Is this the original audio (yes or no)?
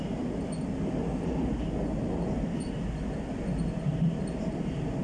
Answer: yes